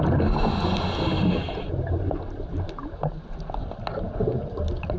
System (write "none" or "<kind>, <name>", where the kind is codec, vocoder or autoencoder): none